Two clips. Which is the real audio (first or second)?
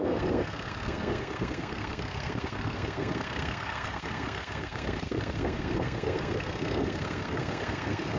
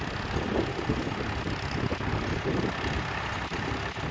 second